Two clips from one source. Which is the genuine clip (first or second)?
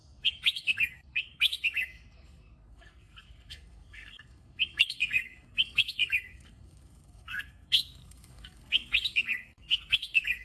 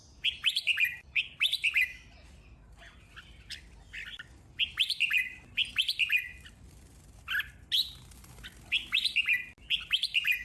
second